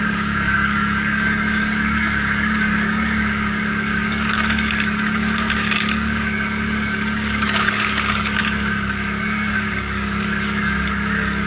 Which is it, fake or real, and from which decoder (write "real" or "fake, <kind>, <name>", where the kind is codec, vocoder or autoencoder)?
fake, codec, DAC